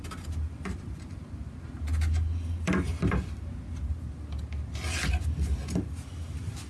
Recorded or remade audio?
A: recorded